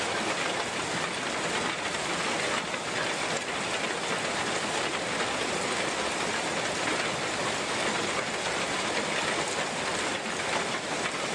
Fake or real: real